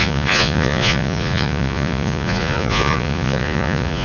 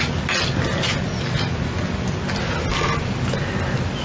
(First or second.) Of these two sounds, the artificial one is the first